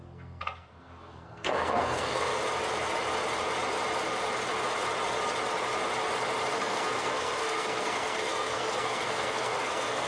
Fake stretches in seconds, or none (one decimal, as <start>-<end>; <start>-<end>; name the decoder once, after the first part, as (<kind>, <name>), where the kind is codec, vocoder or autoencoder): 0.0-2.3 (codec, SNAC); 6.5-10.1